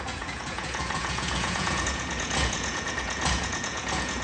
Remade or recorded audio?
remade